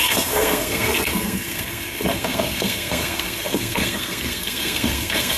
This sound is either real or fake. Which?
fake